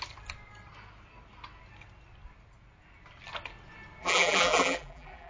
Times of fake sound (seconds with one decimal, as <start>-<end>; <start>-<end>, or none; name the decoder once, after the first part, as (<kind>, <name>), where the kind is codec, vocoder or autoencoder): 4.0-5.3 (vocoder, BigVGAN v2)